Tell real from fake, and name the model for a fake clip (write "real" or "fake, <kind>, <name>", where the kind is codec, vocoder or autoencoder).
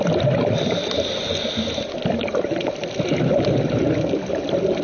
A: real